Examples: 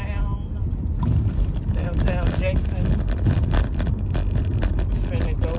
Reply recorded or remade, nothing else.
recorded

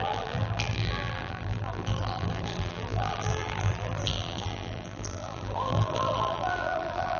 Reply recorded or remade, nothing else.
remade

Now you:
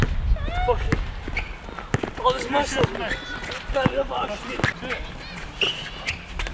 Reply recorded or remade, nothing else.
recorded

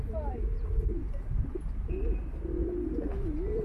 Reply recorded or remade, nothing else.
recorded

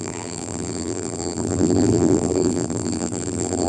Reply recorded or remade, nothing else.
remade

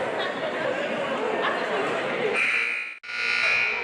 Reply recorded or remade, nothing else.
recorded